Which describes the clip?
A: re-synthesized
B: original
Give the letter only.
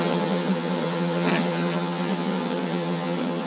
A